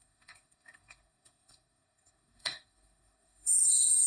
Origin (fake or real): fake